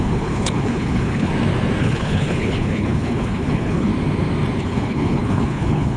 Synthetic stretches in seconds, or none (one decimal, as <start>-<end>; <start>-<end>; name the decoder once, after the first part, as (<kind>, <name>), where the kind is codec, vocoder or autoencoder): 0.0-1.3 (codec, HILCodec); 1.8-3.9; 4.6-6.0